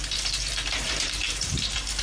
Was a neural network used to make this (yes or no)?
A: yes